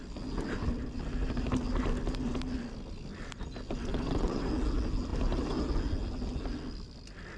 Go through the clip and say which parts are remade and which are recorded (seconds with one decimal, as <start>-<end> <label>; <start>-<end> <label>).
0.0-3.9 recorded; 3.9-4.5 remade; 4.5-7.4 recorded